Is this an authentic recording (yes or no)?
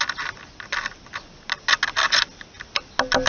yes